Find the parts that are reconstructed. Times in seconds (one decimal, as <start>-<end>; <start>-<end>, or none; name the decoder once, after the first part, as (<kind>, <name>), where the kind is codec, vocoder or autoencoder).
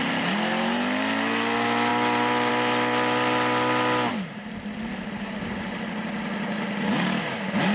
none